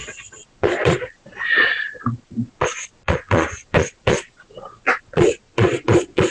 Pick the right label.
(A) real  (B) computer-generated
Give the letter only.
B